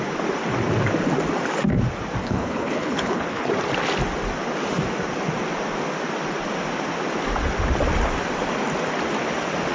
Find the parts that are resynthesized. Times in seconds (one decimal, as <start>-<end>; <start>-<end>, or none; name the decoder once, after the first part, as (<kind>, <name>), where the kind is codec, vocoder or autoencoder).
2.2-3.5 (codec, HILCodec)